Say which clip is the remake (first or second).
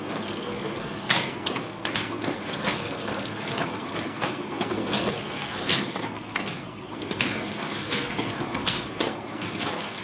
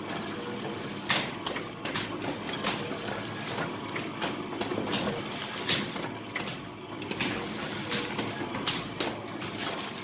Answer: first